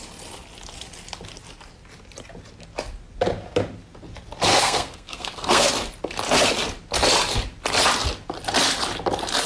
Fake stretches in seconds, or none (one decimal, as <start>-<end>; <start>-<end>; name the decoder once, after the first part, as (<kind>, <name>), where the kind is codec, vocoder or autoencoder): 4.5-5.7 (codec, SNAC)